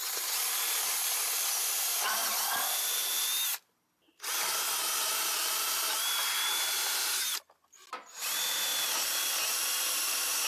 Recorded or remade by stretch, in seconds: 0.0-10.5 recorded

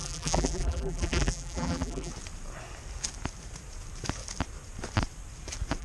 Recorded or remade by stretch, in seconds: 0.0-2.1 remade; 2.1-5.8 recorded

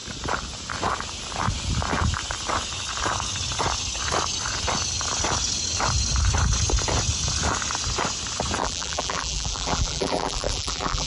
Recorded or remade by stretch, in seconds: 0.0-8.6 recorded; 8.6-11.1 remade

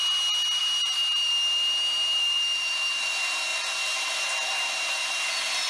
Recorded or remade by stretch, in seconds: 0.0-0.6 recorded; 0.6-1.3 remade; 1.3-2.1 recorded; 2.1-3.1 remade; 3.1-3.5 recorded; 3.5-5.1 remade; 5.1-5.7 recorded

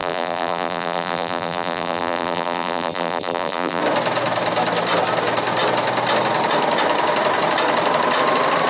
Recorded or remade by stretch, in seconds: 0.0-3.8 remade; 3.8-8.7 recorded

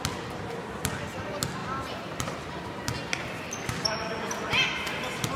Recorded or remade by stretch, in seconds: 0.0-1.6 recorded; 1.6-2.8 remade; 2.8-5.4 recorded

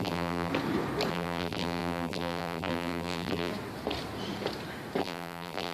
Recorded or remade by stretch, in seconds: 0.0-0.5 remade; 0.5-1.1 recorded; 1.1-3.5 remade; 3.5-5.0 recorded; 5.0-5.7 remade